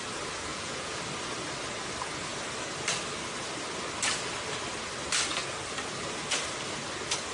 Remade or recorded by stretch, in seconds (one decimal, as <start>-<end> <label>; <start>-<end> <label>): 0.0-0.5 recorded; 0.5-1.0 remade; 1.0-7.3 recorded